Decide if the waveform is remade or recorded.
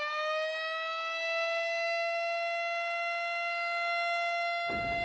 remade